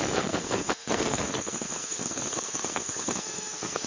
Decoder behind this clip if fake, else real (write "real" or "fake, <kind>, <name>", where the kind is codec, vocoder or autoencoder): fake, codec, SNAC